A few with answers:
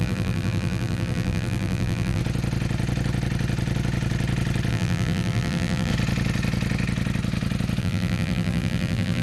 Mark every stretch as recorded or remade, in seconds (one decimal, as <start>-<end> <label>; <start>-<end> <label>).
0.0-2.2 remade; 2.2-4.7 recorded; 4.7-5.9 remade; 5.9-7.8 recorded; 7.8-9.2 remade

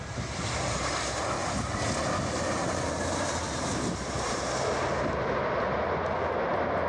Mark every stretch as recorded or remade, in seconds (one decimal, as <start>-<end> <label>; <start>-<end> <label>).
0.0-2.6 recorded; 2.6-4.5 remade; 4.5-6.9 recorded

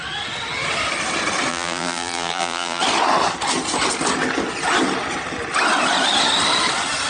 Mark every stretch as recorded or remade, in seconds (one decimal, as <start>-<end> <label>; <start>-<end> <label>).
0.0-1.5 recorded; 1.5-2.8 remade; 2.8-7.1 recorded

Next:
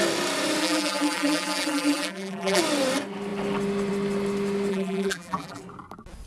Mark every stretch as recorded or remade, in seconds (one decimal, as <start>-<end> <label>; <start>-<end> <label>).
0.0-0.6 recorded; 0.6-2.6 remade; 2.6-4.7 recorded; 4.7-5.6 remade; 5.6-6.3 recorded

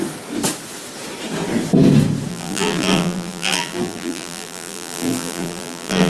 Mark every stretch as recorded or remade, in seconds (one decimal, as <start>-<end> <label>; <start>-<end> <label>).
0.0-2.3 recorded; 2.3-6.1 remade

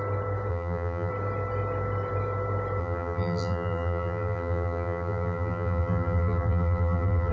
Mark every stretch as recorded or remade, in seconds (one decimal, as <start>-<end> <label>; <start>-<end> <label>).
0.0-0.5 recorded; 0.5-1.1 remade; 1.1-2.8 recorded; 2.8-7.3 remade

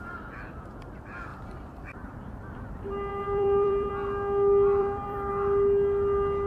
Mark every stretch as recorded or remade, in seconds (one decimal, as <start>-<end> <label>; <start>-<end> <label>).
0.0-1.3 recorded; 1.3-2.7 remade; 2.7-3.1 recorded; 3.1-3.9 remade; 3.9-4.8 recorded; 4.8-5.3 remade; 5.3-6.5 recorded